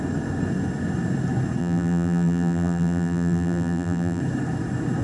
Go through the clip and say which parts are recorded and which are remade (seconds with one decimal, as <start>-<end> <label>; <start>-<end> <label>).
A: 0.0-1.6 recorded; 1.6-4.2 remade; 4.2-5.0 recorded

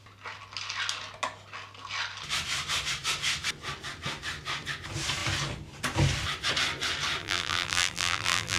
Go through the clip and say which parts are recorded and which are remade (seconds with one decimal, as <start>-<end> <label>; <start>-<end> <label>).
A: 0.0-7.2 recorded; 7.2-8.6 remade

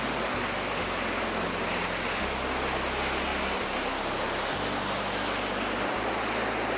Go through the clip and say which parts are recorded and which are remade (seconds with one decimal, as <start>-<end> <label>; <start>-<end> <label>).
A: 0.0-6.8 recorded

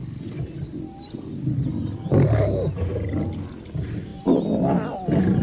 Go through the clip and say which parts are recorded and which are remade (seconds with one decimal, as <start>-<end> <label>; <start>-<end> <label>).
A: 0.0-5.4 recorded

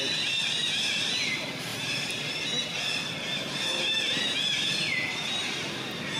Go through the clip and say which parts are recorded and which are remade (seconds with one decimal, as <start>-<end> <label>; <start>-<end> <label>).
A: 0.0-3.3 recorded; 3.3-4.2 remade; 4.2-6.2 recorded

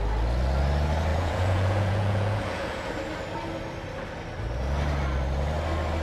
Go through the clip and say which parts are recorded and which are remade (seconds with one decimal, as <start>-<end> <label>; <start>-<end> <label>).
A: 0.0-1.1 recorded; 1.1-2.9 remade; 2.9-6.0 recorded